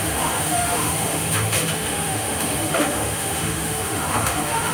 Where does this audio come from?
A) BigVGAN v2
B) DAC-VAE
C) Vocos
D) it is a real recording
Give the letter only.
B